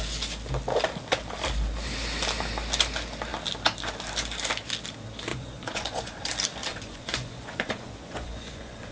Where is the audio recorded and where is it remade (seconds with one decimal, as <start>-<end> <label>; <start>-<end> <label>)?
0.0-5.3 recorded; 5.3-6.3 remade; 6.3-6.7 recorded; 6.7-8.9 remade